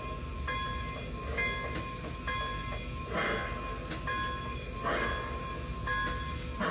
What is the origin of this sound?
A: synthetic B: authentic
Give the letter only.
B